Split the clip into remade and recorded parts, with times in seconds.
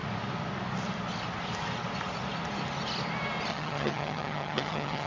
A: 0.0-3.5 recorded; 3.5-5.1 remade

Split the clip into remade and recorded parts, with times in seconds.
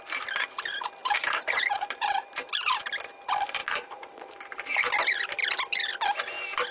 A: 0.0-1.0 recorded; 1.0-2.8 remade; 2.8-3.6 recorded; 3.6-4.9 remade; 4.9-6.7 recorded